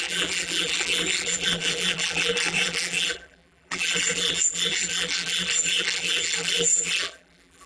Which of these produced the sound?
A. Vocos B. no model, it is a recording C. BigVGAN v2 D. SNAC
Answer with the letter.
C